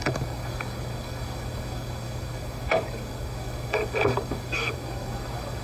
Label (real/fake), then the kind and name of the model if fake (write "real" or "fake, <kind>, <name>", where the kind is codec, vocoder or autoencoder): fake, codec, DAC